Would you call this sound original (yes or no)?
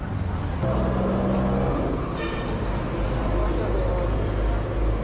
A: yes